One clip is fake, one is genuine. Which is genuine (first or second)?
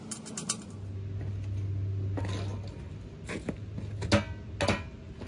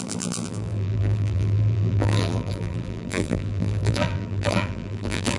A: first